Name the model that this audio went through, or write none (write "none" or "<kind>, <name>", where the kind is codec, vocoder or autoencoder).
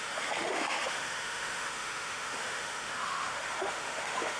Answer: autoencoder, DAC-VAE